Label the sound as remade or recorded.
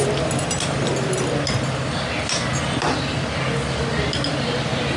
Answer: recorded